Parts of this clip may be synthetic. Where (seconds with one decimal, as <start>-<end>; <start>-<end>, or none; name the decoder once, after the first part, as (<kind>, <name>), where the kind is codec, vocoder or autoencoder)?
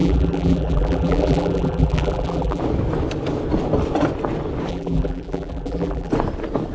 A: 0.0-2.6 (vocoder, BigVGAN v2); 4.7-6.1